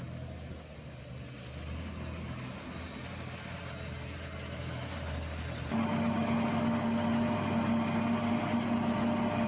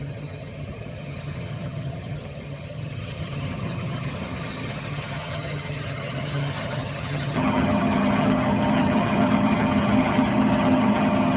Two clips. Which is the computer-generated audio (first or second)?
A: second